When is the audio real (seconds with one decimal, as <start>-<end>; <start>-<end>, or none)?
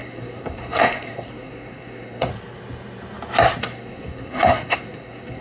2.3-3.6